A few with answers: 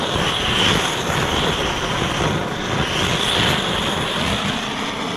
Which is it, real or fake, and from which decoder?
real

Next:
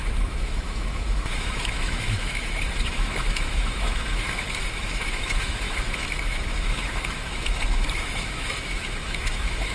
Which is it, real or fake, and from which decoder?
fake, autoencoder, DAC-VAE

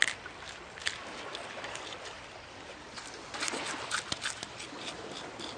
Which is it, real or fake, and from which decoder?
real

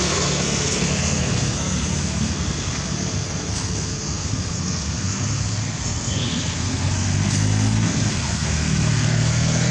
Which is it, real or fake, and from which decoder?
fake, codec, SNAC